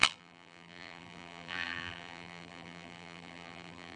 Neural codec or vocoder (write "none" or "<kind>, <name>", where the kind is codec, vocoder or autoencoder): vocoder, BigVGAN v2